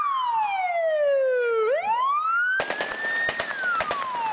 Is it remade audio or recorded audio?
recorded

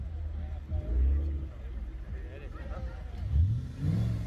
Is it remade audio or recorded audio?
recorded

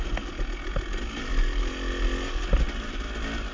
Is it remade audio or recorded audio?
recorded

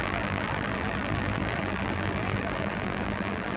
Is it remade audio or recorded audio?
remade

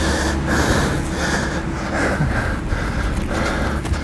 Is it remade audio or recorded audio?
recorded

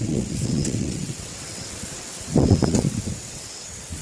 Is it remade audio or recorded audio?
remade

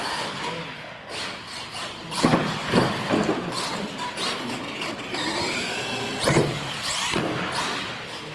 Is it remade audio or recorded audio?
recorded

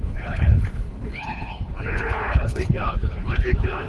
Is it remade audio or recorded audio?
remade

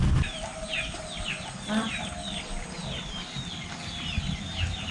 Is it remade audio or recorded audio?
recorded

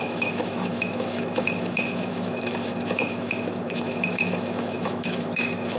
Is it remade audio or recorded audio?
remade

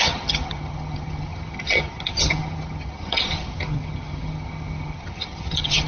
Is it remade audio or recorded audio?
remade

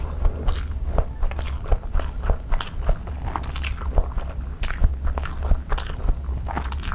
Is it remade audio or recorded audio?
recorded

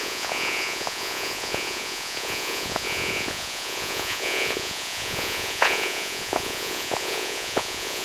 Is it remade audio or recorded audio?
remade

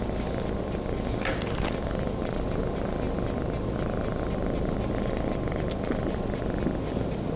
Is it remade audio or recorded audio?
recorded